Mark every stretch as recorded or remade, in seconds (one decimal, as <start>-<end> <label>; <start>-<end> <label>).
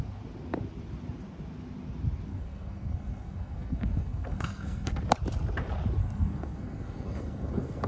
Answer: 0.0-2.3 recorded; 2.3-5.0 remade; 5.0-6.0 recorded; 6.0-7.9 remade